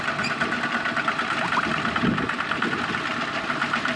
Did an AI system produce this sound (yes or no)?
no